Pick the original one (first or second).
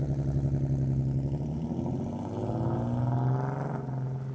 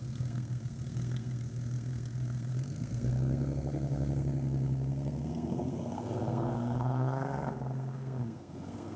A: first